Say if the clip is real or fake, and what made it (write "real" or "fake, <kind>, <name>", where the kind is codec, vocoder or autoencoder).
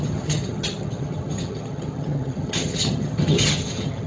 fake, vocoder, HiFi-GAN